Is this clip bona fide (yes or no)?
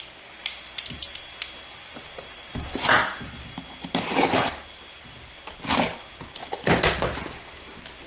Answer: yes